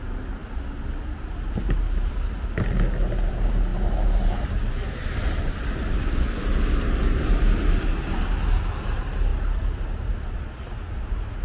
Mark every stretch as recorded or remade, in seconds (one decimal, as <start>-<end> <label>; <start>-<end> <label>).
0.0-11.4 recorded